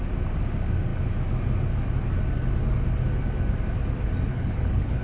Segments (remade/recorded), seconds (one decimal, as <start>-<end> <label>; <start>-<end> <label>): 0.0-4.3 recorded; 4.3-5.0 remade